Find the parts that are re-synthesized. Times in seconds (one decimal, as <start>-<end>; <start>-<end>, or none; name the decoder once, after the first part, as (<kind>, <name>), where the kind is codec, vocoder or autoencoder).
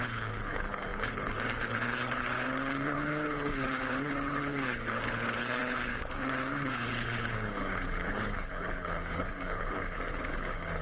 0.0-10.8 (codec, HILCodec)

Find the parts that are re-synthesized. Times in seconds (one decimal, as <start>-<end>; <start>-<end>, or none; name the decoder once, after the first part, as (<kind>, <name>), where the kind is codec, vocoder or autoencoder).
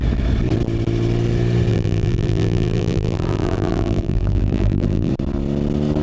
1.7-5.1 (vocoder, BigVGAN v2)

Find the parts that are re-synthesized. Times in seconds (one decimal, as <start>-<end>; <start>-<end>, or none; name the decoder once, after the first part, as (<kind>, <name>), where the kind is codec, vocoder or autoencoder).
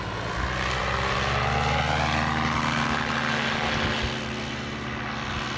none